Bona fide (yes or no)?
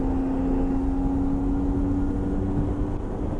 yes